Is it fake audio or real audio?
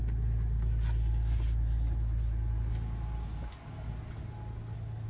real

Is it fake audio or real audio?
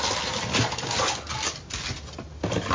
real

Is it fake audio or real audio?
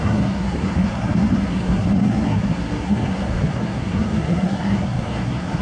fake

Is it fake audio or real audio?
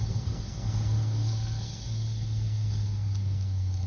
fake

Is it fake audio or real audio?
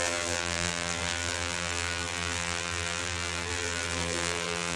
fake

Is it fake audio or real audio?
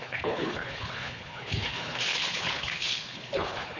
fake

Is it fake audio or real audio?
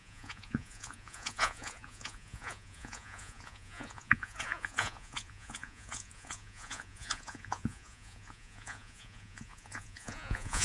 fake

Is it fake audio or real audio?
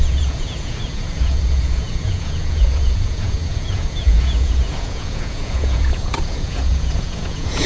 fake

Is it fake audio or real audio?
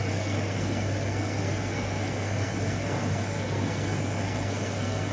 fake